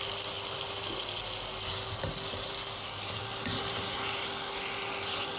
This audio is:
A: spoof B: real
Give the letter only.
B